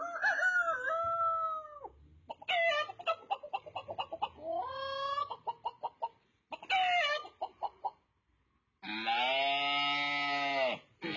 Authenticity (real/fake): real